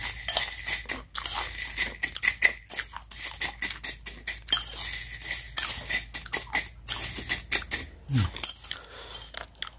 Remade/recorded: recorded